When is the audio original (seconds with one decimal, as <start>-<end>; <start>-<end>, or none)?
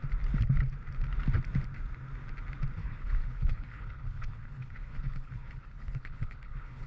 0.0-2.8